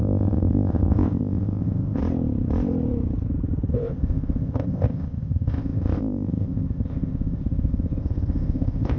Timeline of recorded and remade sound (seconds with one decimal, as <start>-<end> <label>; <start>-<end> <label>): 0.0-2.0 remade; 2.0-3.7 recorded; 3.7-9.0 remade